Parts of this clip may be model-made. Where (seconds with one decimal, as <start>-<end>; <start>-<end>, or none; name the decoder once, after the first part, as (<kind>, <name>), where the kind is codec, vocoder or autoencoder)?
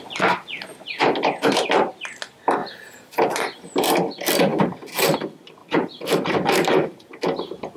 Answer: 2.6-3.9 (vocoder, BigVGAN v2); 4.5-5.1; 5.6-7.1